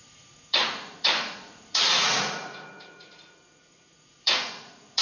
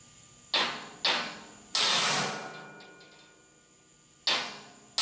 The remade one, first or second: first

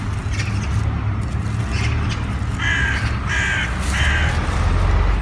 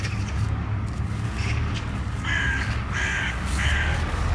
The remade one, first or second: second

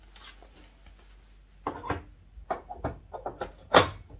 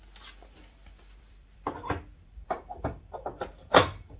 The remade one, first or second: second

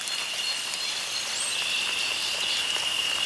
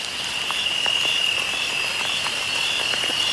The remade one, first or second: first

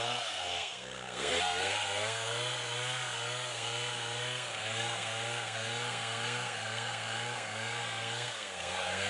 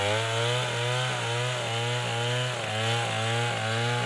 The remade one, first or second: first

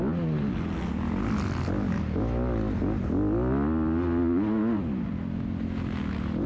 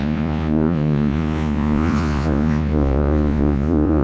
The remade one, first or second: second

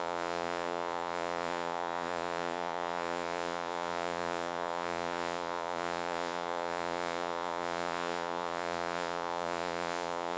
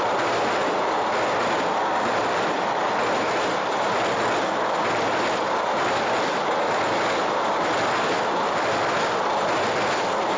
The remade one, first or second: first